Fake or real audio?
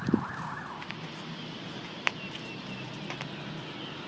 real